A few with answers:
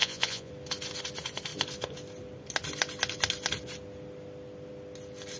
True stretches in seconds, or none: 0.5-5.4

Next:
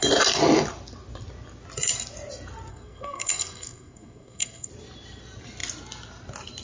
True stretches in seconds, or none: 0.0-2.7; 4.7-6.6

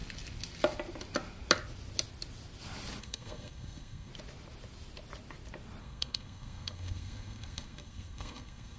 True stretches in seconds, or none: 0.0-3.0; 4.1-5.8